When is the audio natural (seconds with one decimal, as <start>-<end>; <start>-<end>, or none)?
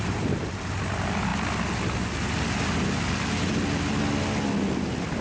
0.0-5.2